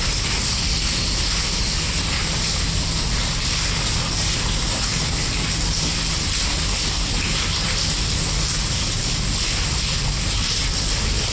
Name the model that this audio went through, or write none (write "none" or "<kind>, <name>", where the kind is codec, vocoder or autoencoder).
none